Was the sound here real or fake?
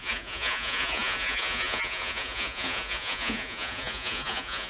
fake